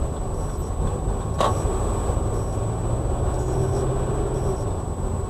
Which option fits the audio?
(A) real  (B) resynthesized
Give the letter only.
A